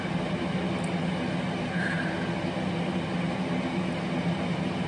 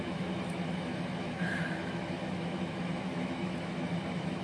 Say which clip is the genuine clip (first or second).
first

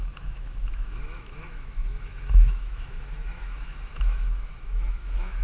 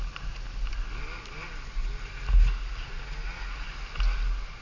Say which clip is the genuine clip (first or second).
second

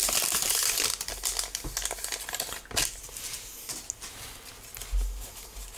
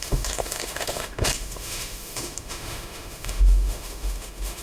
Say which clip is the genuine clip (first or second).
first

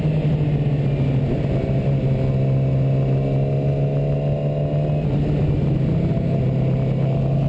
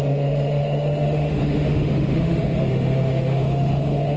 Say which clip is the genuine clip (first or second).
first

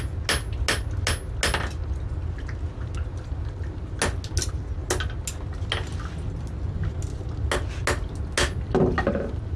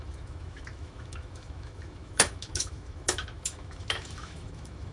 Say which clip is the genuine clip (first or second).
first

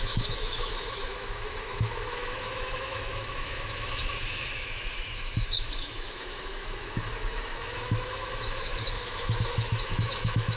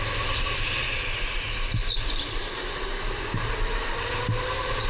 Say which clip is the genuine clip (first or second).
second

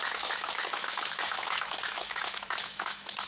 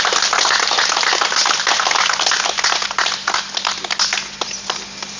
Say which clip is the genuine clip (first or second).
second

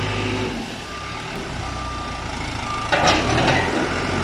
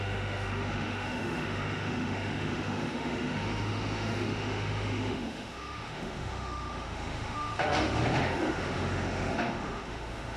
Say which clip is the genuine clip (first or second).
first